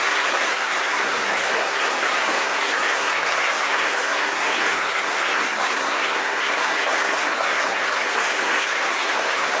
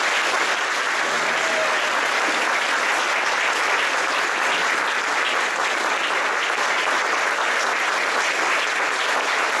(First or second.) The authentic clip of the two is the second